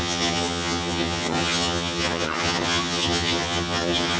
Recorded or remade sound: remade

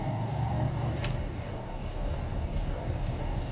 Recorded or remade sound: remade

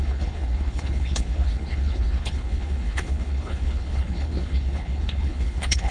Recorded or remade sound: remade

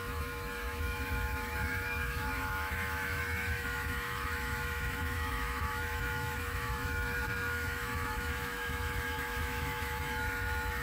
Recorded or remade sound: remade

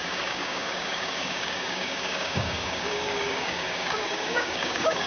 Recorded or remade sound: remade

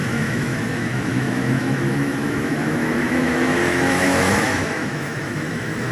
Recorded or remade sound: remade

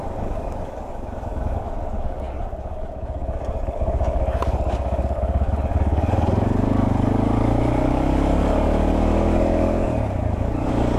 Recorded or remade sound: remade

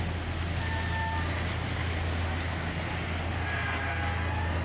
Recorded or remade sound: recorded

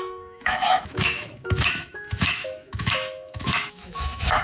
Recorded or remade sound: remade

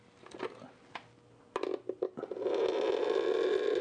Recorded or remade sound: recorded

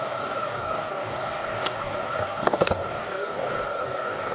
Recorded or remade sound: remade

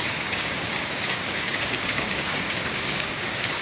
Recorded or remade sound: remade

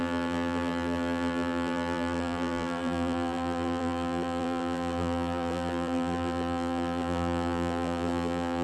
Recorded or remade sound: remade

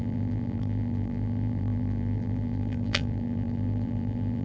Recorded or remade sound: remade